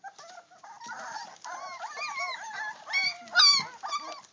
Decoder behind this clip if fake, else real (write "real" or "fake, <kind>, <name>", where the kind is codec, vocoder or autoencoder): real